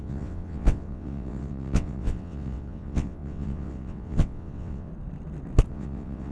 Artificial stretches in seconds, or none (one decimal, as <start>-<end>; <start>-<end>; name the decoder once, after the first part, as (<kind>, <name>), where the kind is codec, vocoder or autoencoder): 0.0-4.9 (vocoder, WaveNeXt); 5.7-6.3